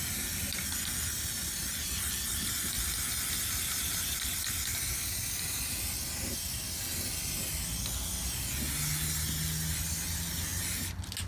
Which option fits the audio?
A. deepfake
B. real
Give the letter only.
B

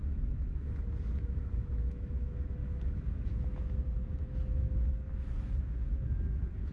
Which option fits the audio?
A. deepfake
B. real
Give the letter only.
A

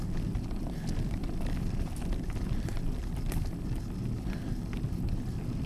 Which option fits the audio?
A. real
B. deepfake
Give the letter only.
A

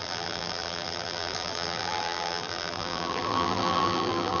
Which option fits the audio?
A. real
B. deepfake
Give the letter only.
B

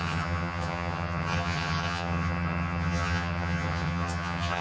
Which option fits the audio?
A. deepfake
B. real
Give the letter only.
A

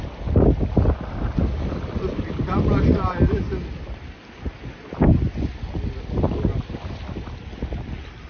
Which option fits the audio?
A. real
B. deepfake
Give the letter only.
A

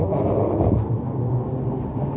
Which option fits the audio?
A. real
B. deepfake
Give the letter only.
A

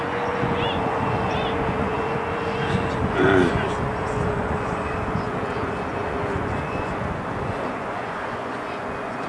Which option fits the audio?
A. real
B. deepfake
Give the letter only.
B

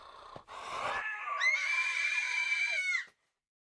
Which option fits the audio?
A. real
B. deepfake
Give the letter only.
B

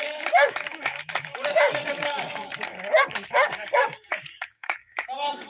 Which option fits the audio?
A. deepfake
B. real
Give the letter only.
A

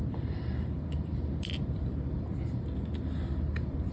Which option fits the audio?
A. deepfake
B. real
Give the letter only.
A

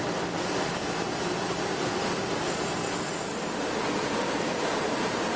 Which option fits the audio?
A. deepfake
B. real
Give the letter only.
B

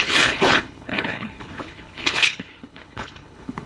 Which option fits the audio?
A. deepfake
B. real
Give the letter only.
A